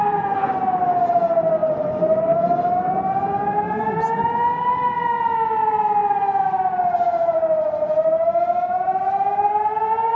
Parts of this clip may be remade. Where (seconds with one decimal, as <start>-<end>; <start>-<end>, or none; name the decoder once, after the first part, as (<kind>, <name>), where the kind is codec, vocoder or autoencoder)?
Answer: 6.0-9.6 (vocoder, BigVGAN v2)